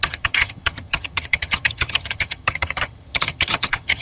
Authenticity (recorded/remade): remade